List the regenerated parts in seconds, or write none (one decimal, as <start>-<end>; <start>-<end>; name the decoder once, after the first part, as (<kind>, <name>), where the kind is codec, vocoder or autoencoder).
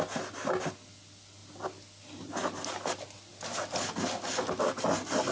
none